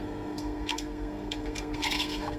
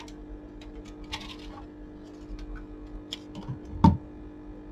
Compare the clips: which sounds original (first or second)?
second